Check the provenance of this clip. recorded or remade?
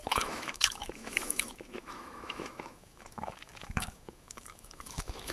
remade